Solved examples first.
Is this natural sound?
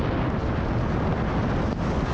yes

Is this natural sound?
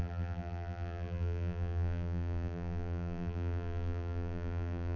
no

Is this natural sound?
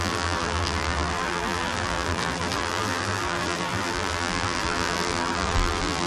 no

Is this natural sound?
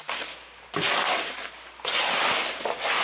yes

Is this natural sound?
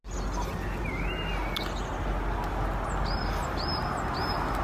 yes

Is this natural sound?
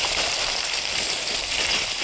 no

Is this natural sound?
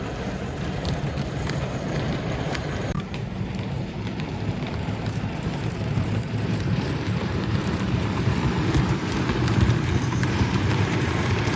no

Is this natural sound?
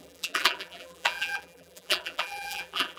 no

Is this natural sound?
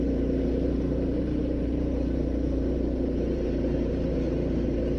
no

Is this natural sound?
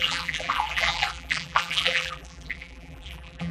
no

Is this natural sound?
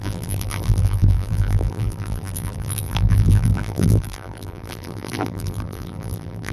no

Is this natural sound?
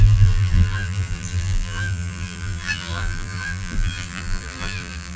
no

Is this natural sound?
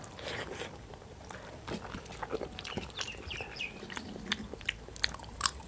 no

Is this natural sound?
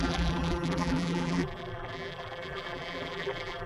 no